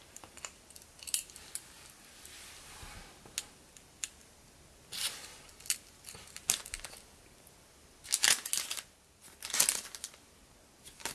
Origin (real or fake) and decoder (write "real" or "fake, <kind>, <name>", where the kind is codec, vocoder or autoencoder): real